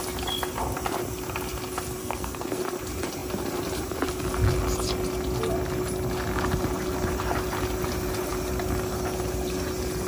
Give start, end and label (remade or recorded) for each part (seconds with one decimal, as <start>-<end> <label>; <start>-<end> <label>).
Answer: 0.0-2.0 recorded; 2.0-2.6 remade; 2.6-10.1 recorded